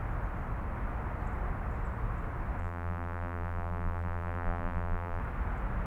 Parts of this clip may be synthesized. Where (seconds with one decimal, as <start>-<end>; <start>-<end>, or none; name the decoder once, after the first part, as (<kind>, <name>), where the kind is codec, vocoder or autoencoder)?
2.6-5.2 (vocoder, BigVGAN v2)

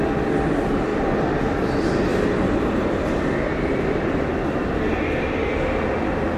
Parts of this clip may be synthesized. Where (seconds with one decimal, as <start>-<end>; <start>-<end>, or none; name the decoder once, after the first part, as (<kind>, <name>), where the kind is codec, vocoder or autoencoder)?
0.9-1.4 (vocoder, BigVGAN v2)

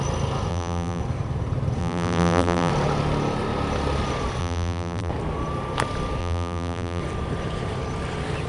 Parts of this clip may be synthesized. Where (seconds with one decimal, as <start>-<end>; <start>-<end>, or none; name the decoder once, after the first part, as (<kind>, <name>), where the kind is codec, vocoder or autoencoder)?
0.5-1.0 (vocoder, BigVGAN v2); 1.8-2.7; 4.4-5.1; 6.2-7.0